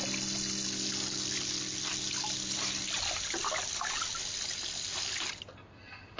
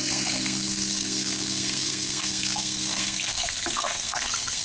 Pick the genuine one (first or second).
first